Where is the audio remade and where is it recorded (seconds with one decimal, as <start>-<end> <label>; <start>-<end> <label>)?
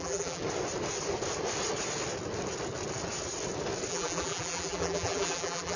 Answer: 0.0-0.4 remade; 0.4-3.9 recorded; 3.9-5.8 remade